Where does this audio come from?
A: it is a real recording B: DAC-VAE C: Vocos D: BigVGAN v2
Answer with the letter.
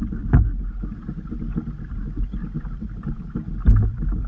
A